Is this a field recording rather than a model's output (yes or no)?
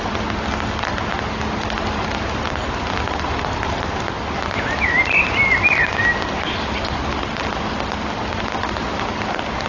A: yes